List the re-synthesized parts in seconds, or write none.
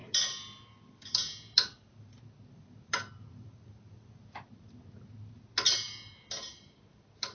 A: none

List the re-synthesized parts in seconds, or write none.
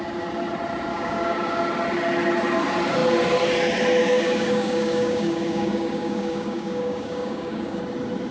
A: 0.9-1.6 (codec, DAC); 4.0-7.8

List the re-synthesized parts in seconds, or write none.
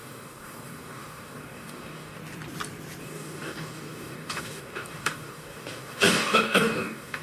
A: 0.0-2.2 (codec, DAC); 3.0-7.2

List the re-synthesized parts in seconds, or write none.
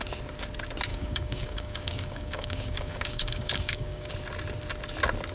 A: 0.9-4.1 (codec, DAC)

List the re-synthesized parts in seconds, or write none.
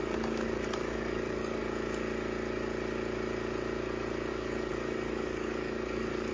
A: 0.0-1.6 (codec, DAC); 4.3-6.3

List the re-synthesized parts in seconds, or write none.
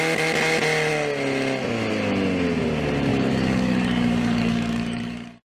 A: 3.1-5.6 (codec, DAC)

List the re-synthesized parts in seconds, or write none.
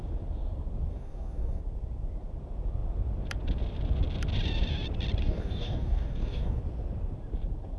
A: 0.9-1.6 (codec, DAC); 5.2-6.6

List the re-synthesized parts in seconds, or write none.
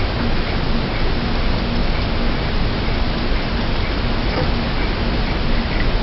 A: none